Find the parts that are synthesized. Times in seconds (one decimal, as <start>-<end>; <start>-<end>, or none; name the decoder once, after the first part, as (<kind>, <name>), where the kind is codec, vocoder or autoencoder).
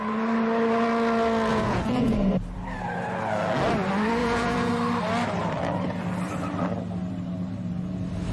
1.5-2.3 (vocoder, Vocos); 4.2-4.7